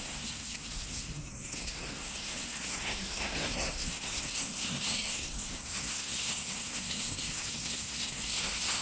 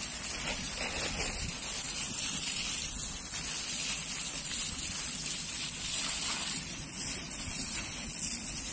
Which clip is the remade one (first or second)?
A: first